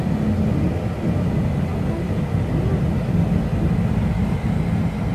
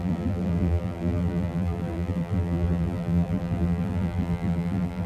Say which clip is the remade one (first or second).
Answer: second